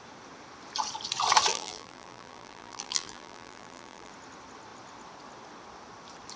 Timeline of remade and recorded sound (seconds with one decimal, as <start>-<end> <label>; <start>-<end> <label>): 0.0-1.5 recorded; 1.5-4.1 remade; 4.1-6.4 recorded

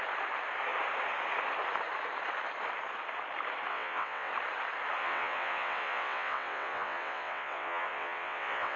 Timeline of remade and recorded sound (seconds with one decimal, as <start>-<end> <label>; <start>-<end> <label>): 0.0-3.7 recorded; 3.7-4.3 remade; 4.3-5.0 recorded; 5.0-8.8 remade

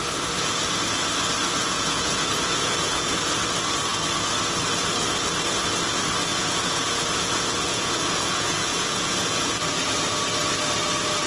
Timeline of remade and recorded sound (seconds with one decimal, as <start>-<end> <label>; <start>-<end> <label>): 0.0-1.6 recorded; 1.6-3.2 remade; 3.2-6.3 recorded; 6.3-9.6 remade; 9.6-11.3 recorded

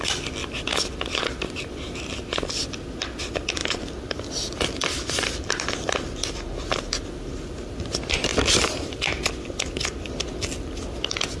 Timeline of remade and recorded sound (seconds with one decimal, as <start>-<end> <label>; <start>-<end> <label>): 0.0-11.4 recorded

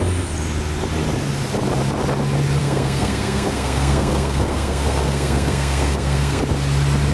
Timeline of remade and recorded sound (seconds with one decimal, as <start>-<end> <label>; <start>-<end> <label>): 0.0-2.6 recorded; 2.6-6.4 remade; 6.4-7.1 recorded